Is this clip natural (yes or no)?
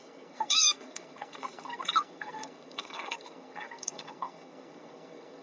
no